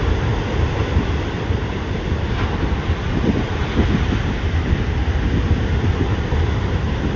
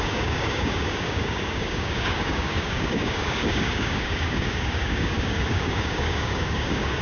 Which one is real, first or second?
first